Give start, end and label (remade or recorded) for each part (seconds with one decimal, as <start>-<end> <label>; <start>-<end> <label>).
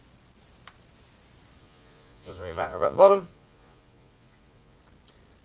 0.0-1.6 recorded; 1.6-4.8 remade; 4.8-5.4 recorded